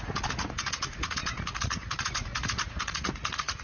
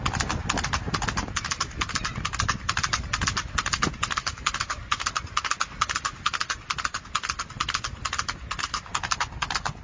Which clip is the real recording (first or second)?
second